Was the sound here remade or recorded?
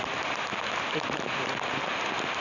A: recorded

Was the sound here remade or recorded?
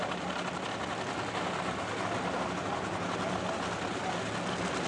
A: recorded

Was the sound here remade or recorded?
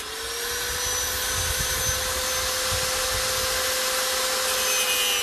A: recorded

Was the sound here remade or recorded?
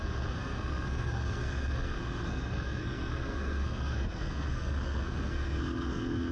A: remade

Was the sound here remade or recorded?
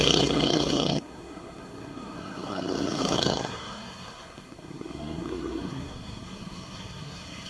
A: remade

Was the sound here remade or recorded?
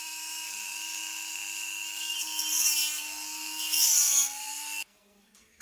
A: remade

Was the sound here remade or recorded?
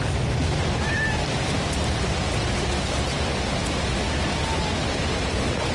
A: recorded